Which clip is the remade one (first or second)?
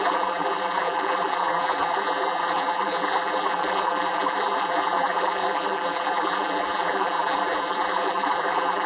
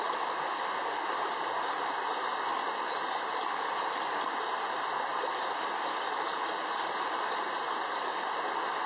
first